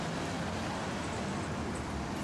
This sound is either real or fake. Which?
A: real